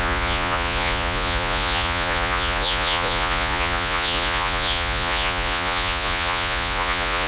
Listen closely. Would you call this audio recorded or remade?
remade